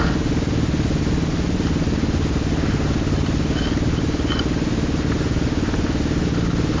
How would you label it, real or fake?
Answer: real